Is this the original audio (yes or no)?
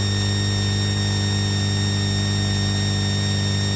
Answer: yes